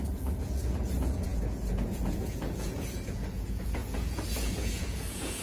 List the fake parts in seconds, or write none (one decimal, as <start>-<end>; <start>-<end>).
0.0-5.4